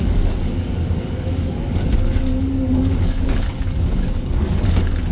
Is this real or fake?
fake